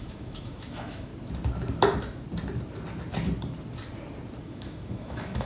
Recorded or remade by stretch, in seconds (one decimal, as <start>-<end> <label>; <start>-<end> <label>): 0.0-1.1 remade; 1.1-4.4 recorded; 4.4-5.5 remade